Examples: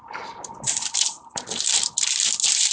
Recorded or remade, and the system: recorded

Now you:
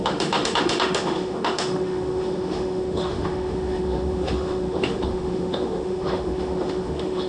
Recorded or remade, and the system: remade, autoencoder, DAC-VAE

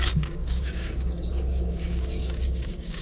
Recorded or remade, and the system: remade, codec, DAC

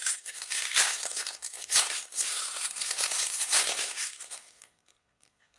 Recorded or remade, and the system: remade, codec, SNAC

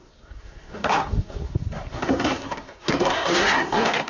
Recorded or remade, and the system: remade, codec, SNAC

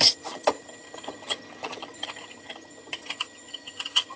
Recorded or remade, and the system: remade, vocoder, HiFi-GAN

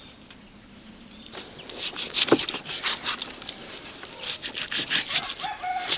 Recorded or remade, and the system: recorded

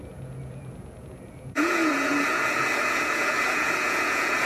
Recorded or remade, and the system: remade, vocoder, Vocos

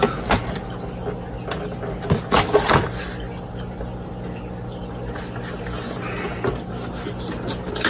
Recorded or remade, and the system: recorded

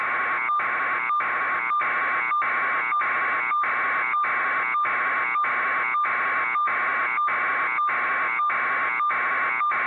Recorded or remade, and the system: recorded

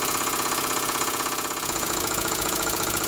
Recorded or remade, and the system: remade, vocoder, Vocos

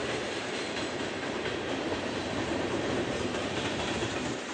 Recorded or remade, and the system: remade, vocoder, BigVGAN v2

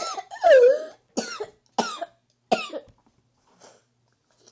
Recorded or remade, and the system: recorded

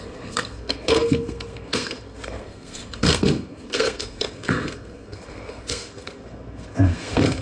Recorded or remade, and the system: remade, codec, SNAC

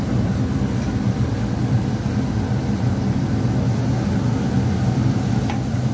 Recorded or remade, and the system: recorded